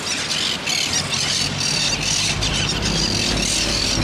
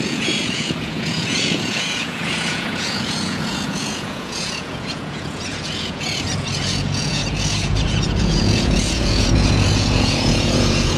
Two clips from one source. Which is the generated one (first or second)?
second